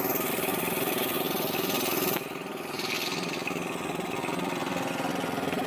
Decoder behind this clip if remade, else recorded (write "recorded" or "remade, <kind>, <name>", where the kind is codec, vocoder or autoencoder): recorded